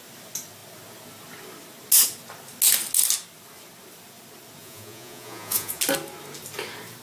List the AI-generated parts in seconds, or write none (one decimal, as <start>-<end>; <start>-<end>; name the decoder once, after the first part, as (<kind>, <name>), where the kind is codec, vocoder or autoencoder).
4.6-5.8 (vocoder, Vocos)